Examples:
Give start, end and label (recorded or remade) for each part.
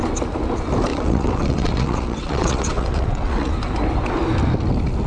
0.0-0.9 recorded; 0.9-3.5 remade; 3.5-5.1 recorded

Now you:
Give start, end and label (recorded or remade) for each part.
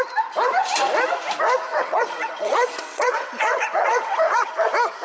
0.0-1.7 recorded; 1.7-4.5 remade; 4.5-5.0 recorded